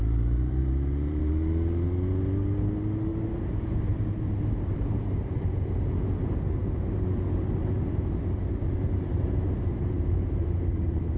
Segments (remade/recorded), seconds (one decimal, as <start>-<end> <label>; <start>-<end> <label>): 0.0-1.3 remade; 1.3-3.1 recorded; 3.1-5.3 remade; 5.3-6.6 recorded; 6.6-11.2 remade